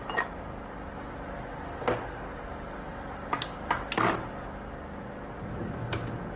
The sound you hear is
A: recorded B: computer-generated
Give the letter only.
A